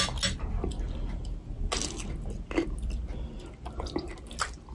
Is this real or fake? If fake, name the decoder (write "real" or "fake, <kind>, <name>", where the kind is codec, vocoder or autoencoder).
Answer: real